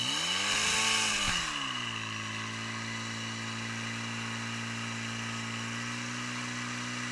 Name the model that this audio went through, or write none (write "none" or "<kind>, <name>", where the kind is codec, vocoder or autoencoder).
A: none